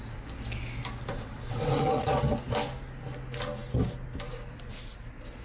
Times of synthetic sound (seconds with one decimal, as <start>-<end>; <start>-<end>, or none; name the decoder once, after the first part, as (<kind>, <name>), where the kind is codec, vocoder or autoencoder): 1.1-2.2 (vocoder, WaveNeXt)